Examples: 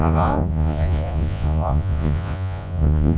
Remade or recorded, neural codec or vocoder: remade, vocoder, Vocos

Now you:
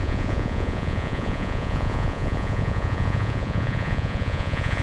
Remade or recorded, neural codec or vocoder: remade, vocoder, Vocos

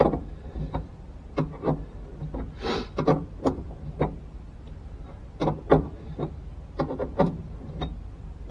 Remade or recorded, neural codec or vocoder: recorded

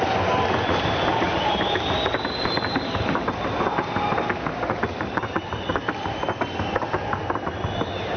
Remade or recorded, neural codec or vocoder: recorded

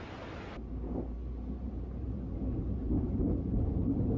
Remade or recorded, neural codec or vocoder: remade, vocoder, BigVGAN v2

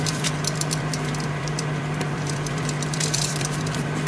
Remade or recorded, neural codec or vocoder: remade, vocoder, BigVGAN v2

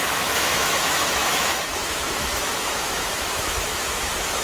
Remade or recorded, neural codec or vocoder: remade, autoencoder, DAC-VAE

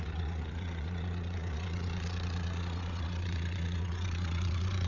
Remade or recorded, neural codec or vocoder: remade, vocoder, Vocos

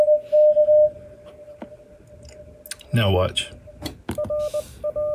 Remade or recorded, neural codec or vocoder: recorded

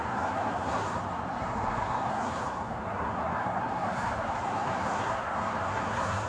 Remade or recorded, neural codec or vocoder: remade, codec, SNAC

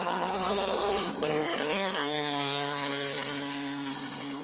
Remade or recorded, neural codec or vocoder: remade, codec, SNAC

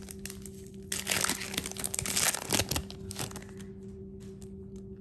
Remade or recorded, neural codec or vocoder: recorded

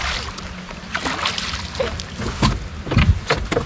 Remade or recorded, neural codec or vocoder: recorded